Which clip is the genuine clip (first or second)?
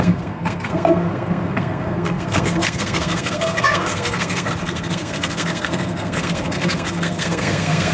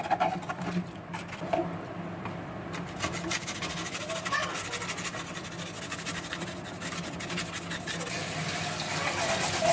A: second